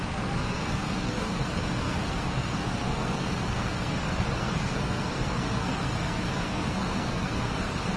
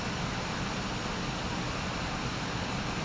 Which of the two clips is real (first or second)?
second